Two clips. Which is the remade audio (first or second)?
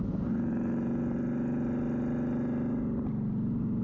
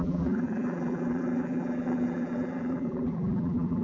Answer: second